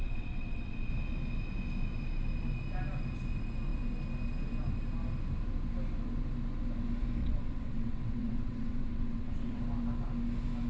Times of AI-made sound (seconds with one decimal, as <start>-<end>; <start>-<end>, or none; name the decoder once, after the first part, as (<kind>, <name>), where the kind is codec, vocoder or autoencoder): 0.0-0.9 (vocoder, WaveNeXt); 7.2-9.6